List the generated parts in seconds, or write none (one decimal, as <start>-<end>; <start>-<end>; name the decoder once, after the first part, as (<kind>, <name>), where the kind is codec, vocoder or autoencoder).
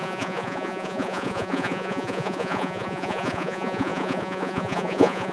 0.0-5.3 (vocoder, Vocos)